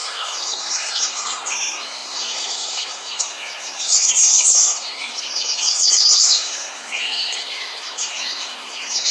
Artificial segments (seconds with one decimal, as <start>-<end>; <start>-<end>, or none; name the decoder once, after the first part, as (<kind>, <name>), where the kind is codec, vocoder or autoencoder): 0.0-9.1 (codec, SNAC)